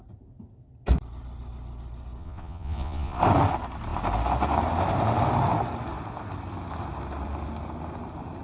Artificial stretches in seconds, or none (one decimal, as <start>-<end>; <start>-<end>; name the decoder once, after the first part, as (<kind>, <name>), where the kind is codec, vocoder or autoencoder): 2.2-3.2 (vocoder, Vocos)